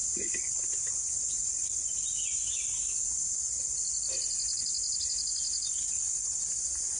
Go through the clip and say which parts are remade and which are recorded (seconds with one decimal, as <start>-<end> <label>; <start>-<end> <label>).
0.0-7.0 recorded

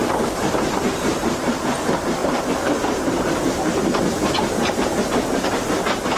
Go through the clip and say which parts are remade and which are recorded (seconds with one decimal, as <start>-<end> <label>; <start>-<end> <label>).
0.0-6.2 recorded

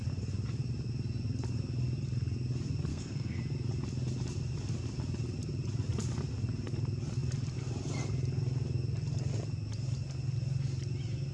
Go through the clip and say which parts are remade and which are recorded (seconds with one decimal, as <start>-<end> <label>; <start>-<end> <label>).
0.0-2.9 recorded; 2.9-3.4 remade; 3.4-11.3 recorded

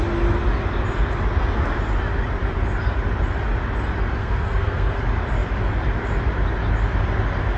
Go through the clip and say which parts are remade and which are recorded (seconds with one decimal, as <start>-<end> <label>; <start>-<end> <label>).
0.0-4.2 recorded; 4.2-5.0 remade; 5.0-7.6 recorded

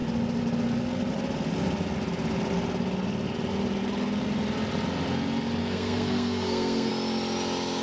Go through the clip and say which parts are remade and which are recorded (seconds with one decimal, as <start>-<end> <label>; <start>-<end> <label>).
0.0-5.6 recorded; 5.6-6.9 remade; 6.9-7.8 recorded

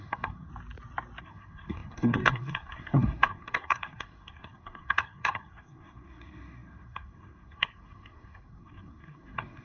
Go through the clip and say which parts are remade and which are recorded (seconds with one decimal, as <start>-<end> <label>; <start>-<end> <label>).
0.0-0.5 remade; 0.5-1.2 recorded; 1.2-9.6 remade

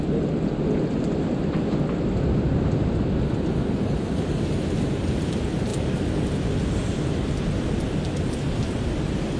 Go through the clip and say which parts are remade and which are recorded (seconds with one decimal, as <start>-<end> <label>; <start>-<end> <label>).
0.0-9.4 recorded

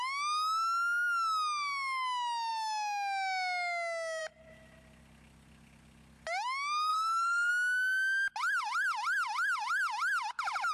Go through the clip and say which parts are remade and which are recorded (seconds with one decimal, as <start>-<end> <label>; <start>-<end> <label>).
0.0-6.9 recorded; 6.9-7.5 remade; 7.5-10.7 recorded